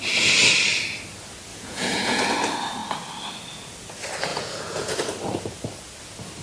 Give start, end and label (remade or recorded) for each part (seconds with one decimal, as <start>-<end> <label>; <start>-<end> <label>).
0.0-1.5 recorded; 1.5-2.2 remade; 2.2-4.3 recorded; 4.3-5.0 remade; 5.0-6.4 recorded